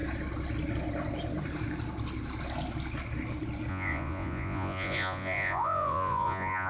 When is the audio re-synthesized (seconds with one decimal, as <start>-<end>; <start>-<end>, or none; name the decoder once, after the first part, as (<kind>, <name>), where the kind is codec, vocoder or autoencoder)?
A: 3.7-6.7 (vocoder, Vocos)